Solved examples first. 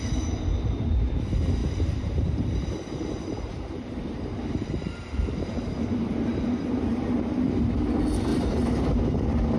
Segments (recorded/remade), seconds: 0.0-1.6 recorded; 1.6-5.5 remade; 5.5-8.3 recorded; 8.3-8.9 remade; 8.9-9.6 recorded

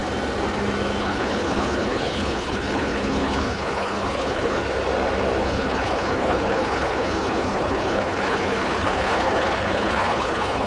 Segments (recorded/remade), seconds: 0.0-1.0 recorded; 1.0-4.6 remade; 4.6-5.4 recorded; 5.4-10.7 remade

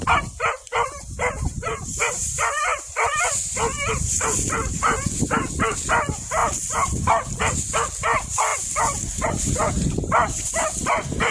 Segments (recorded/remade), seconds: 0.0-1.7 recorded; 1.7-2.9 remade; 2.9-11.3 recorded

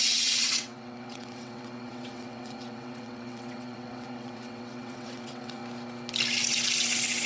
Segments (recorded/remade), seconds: 0.0-5.6 remade; 5.6-7.3 recorded

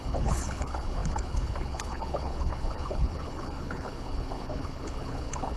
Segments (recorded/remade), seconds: 0.0-5.6 remade

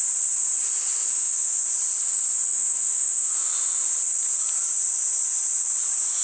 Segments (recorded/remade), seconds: 0.0-1.1 recorded; 1.1-1.7 remade; 1.7-2.5 recorded; 2.5-3.5 remade; 3.5-6.2 recorded

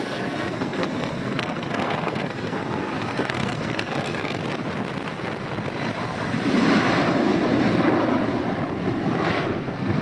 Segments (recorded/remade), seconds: 0.0-4.4 remade; 4.4-9.3 recorded; 9.3-10.0 remade

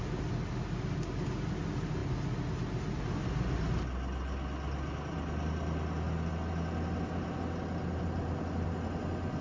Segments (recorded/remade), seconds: 0.0-9.4 recorded